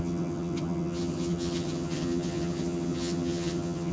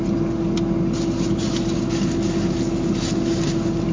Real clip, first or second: second